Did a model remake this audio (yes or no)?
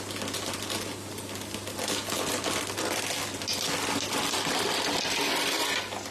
no